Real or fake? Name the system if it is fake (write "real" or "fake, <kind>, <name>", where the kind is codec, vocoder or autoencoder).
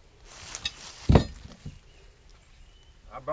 real